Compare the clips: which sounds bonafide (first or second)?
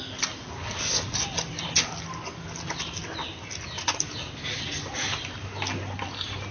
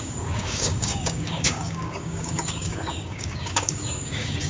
first